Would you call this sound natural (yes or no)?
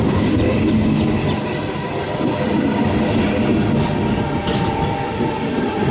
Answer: yes